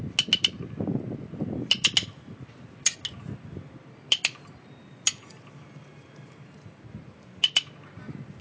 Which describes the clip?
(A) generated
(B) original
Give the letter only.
B